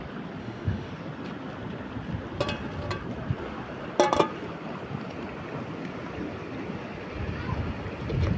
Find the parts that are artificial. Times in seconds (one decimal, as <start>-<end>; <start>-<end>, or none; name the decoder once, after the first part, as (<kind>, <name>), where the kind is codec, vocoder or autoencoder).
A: 0.4-0.9 (autoencoder, DAC-VAE)